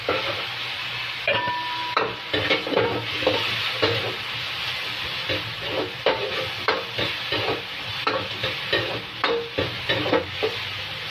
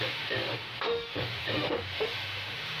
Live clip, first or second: first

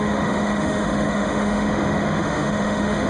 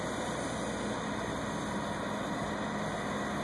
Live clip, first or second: second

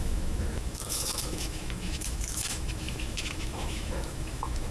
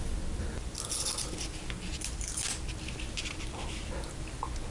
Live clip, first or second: second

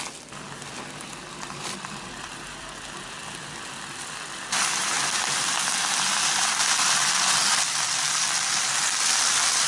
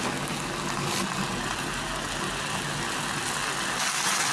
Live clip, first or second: second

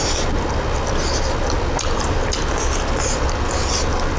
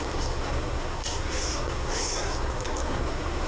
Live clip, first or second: first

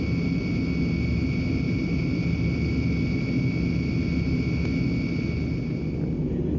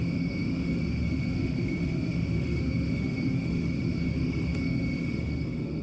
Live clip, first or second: first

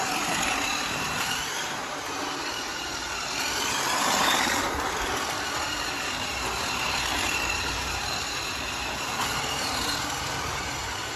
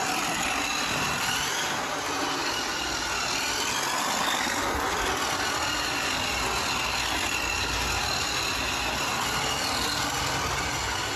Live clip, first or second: second